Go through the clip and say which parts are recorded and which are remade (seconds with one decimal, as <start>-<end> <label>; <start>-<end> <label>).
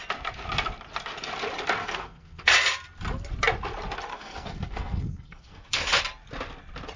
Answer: 0.0-1.8 recorded; 1.8-2.5 remade; 2.5-4.1 recorded; 4.1-6.0 remade; 6.0-7.0 recorded